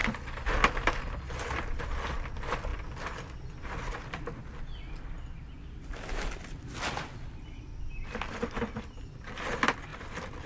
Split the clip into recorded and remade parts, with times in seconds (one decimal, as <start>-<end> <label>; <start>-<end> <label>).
0.0-10.5 recorded